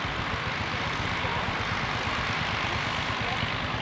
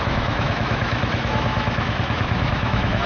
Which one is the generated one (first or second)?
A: second